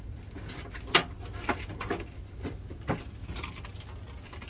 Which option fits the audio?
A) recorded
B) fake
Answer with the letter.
A